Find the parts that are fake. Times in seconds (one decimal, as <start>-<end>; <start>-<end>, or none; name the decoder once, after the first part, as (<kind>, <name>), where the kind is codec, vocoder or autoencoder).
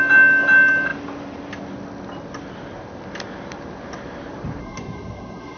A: 4.6-5.6 (codec, SNAC)